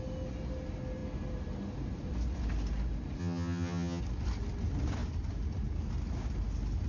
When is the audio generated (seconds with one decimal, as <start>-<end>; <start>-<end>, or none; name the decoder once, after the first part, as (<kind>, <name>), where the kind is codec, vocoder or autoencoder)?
3.2-4.0 (vocoder, HiFi-GAN)